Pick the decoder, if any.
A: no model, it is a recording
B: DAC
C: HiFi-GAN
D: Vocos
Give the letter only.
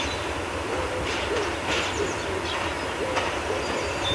A